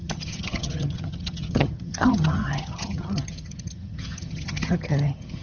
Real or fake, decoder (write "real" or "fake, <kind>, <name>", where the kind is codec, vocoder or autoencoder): fake, vocoder, HiFi-GAN